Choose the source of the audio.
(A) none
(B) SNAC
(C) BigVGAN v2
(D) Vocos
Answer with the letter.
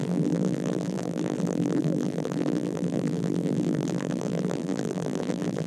C